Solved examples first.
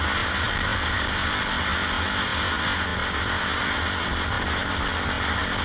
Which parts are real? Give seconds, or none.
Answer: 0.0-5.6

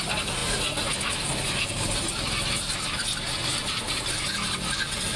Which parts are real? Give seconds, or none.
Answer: 0.0-5.2